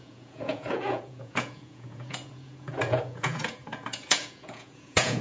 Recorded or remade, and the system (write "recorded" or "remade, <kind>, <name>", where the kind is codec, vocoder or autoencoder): remade, vocoder, Vocos